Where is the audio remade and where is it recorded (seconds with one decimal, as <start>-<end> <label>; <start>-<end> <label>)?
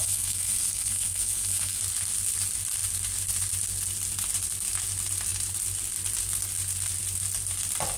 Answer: 0.0-1.8 remade; 1.8-8.0 recorded